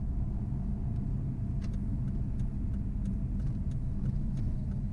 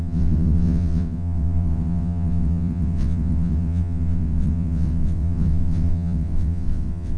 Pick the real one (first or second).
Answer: first